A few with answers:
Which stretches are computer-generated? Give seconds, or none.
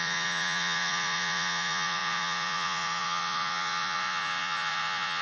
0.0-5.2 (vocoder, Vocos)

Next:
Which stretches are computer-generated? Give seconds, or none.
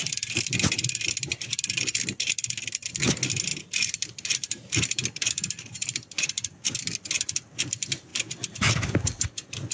3.5-6.8 (vocoder, BigVGAN v2)